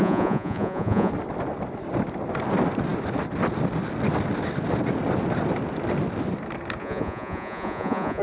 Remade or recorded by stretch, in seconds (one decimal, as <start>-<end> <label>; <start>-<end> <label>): 0.0-1.1 remade; 1.1-6.8 recorded; 6.8-8.2 remade

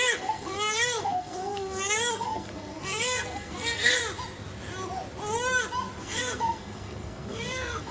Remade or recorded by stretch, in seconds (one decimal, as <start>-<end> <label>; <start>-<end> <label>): 0.0-4.0 remade; 4.0-6.0 recorded; 6.0-7.9 remade